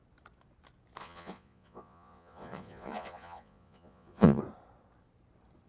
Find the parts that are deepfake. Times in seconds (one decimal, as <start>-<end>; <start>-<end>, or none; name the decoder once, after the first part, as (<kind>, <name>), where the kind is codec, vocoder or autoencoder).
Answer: 1.0-4.4 (vocoder, Vocos)